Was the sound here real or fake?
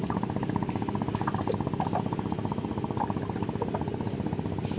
real